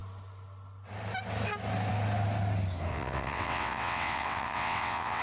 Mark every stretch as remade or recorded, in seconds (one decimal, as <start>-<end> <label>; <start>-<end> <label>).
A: 0.0-2.9 recorded; 2.9-5.2 remade

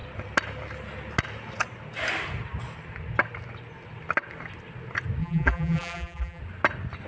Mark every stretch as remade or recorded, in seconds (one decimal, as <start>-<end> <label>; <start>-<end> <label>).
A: 0.0-5.2 recorded; 5.2-6.4 remade; 6.4-7.1 recorded

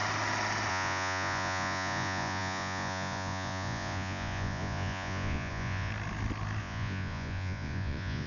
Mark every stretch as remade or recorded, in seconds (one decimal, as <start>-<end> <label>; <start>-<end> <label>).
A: 0.0-0.7 recorded; 0.7-5.9 remade; 5.9-6.6 recorded; 6.6-8.3 remade

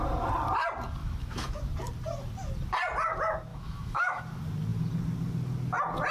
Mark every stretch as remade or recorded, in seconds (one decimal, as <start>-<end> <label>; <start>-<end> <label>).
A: 0.0-1.0 recorded; 1.0-1.6 remade; 1.6-3.5 recorded; 3.5-4.2 remade; 4.2-6.1 recorded

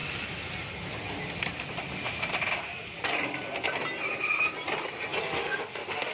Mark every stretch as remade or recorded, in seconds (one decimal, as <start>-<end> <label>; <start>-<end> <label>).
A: 0.0-1.9 recorded; 1.9-2.3 remade; 2.3-5.2 recorded; 5.2-6.1 remade